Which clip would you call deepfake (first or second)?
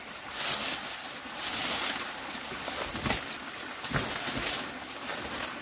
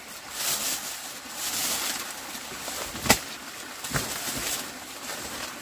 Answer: second